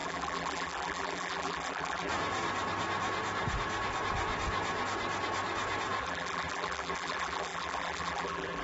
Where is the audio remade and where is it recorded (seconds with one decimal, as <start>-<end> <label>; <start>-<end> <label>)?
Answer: 0.0-2.1 remade; 2.1-6.0 recorded; 6.0-8.6 remade